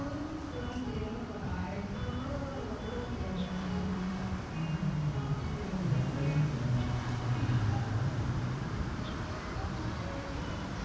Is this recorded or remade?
remade